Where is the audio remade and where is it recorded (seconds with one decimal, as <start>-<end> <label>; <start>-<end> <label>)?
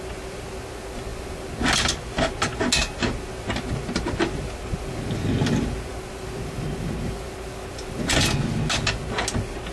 0.0-9.7 recorded